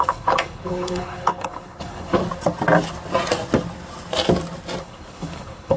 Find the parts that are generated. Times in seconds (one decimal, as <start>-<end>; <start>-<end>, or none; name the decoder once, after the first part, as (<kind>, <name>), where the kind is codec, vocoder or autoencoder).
0.0-2.2 (codec, HILCodec); 4.8-5.8